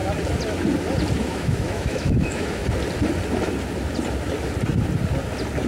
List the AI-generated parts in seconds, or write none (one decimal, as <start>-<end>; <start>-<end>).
1.2-2.6